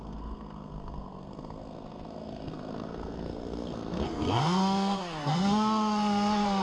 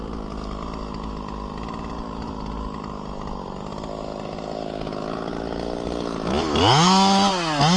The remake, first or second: first